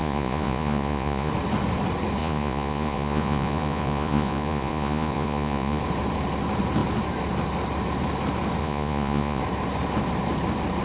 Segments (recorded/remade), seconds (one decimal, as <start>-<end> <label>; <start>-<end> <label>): 0.0-1.3 remade; 1.3-2.2 recorded; 2.2-5.8 remade; 5.8-8.6 recorded; 8.6-9.4 remade; 9.4-10.8 recorded